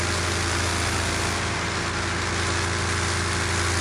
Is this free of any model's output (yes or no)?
yes